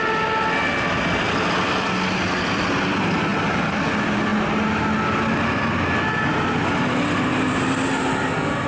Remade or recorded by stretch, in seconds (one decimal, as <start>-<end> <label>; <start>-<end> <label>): 0.0-8.7 recorded